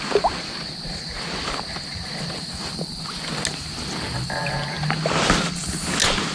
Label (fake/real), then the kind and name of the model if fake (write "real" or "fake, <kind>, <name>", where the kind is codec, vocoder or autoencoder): real